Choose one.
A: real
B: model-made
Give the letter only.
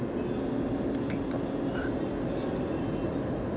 A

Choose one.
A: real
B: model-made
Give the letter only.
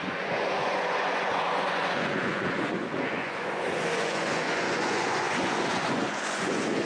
B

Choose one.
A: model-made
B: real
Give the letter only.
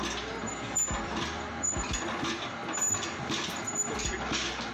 B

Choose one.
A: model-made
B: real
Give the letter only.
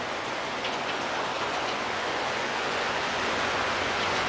A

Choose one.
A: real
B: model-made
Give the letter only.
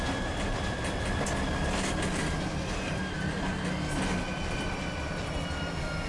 A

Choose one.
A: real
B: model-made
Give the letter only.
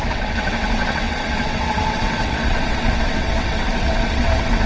B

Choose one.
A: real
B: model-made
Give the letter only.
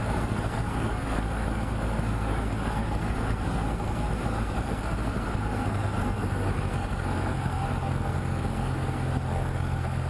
B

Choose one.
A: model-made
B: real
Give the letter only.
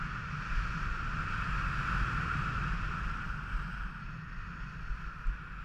B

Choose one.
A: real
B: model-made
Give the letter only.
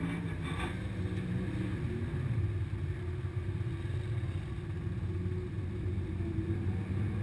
A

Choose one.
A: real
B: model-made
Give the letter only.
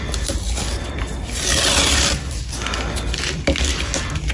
A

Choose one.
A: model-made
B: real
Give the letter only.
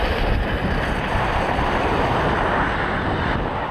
B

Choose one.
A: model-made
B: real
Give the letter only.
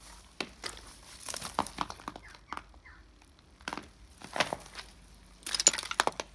B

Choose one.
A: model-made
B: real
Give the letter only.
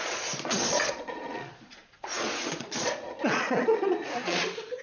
A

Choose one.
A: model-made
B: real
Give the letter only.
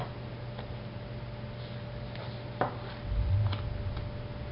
B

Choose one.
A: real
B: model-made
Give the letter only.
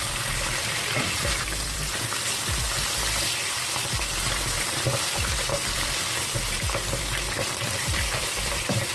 B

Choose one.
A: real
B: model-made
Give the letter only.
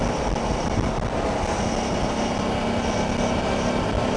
A